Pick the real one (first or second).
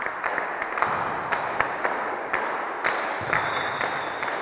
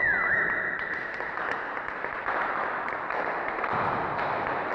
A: first